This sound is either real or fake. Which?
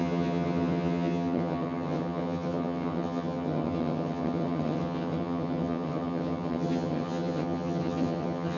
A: fake